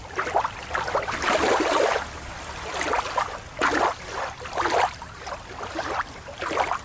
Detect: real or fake fake